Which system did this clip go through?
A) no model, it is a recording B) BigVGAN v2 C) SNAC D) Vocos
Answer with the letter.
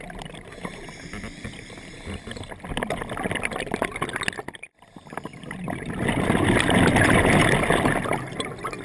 A